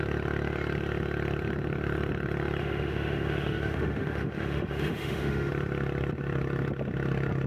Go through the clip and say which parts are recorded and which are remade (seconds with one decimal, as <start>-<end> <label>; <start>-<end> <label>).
0.0-2.6 recorded; 2.6-5.5 remade; 5.5-7.5 recorded